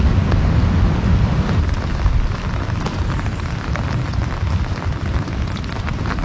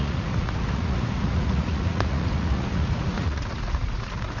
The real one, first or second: first